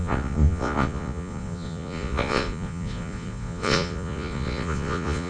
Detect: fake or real fake